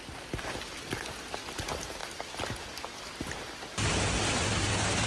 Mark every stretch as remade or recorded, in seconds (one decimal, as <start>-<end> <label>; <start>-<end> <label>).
0.0-5.1 recorded